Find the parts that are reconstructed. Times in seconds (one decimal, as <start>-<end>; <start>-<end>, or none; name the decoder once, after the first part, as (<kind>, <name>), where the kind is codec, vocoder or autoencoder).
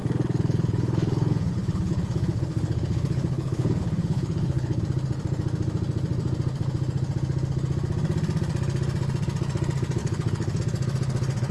0.0-4.8 (codec, HILCodec); 10.0-10.6